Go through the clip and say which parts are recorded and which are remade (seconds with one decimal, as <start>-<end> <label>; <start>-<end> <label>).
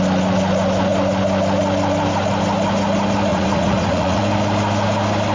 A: 0.0-3.3 recorded; 3.3-4.2 remade; 4.2-5.3 recorded